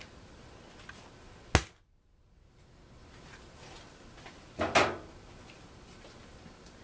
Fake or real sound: real